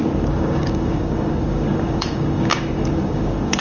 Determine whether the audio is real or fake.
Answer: fake